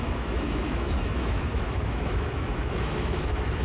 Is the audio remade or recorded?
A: remade